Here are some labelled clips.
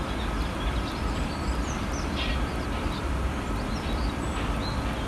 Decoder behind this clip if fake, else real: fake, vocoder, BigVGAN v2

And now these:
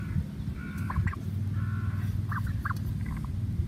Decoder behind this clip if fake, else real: real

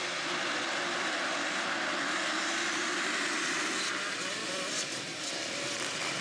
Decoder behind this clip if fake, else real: fake, vocoder, BigVGAN v2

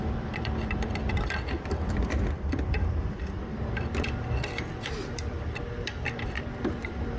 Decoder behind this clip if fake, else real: fake, vocoder, BigVGAN v2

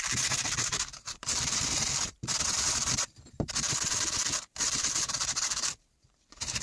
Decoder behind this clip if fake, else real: fake, vocoder, BigVGAN v2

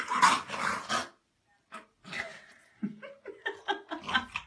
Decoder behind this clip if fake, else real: real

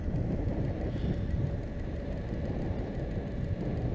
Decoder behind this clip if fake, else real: real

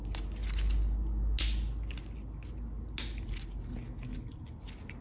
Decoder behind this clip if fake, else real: real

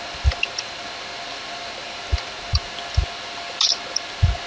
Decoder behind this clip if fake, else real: real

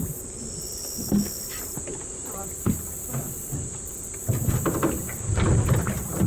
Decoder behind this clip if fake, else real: fake, vocoder, BigVGAN v2